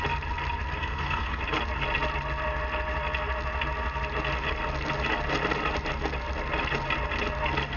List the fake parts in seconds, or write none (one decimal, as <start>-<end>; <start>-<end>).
0.8-1.4